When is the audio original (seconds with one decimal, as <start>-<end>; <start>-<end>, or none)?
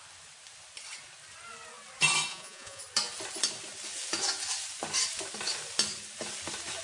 0.0-2.3; 2.8-6.8